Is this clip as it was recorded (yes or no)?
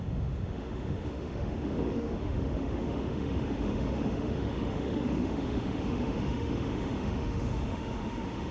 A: no